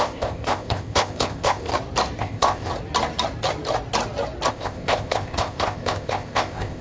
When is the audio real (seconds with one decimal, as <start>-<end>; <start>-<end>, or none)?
1.7-2.2; 2.7-4.5